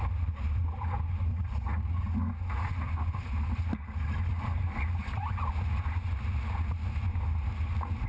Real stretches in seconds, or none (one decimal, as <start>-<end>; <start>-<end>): 0.0-1.3; 2.0-8.1

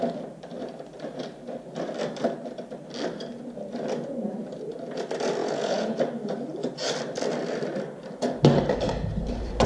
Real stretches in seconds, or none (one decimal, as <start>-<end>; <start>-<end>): 0.0-5.4; 6.0-9.7

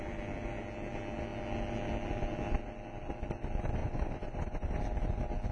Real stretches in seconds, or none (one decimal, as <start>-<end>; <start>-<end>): 0.0-3.8; 4.8-5.5

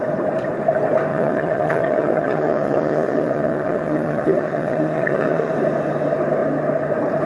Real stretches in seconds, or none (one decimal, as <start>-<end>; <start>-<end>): 0.0-1.1; 5.5-7.3

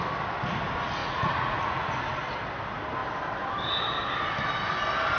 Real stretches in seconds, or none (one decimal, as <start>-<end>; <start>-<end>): 0.0-1.0; 1.9-5.2

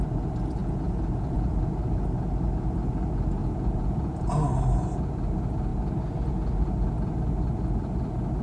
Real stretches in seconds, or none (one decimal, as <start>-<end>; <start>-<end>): 0.0-0.6; 1.6-3.4; 4.3-8.4

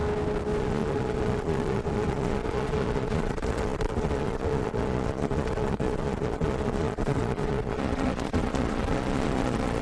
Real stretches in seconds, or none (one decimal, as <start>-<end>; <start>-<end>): 0.0-0.6